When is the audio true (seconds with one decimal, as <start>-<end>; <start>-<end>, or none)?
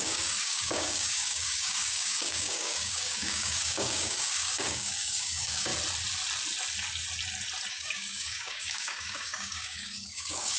5.7-7.7